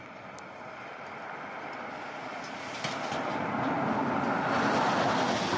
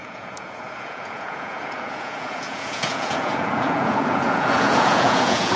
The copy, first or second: second